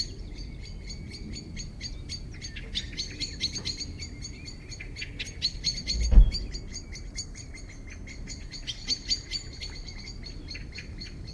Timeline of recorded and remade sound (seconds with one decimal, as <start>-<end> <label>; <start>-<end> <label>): 0.0-6.7 recorded; 6.7-7.6 remade; 7.6-11.3 recorded